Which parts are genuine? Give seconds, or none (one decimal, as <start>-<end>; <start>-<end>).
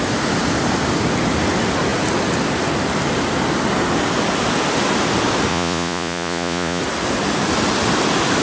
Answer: 0.0-5.5; 6.8-8.4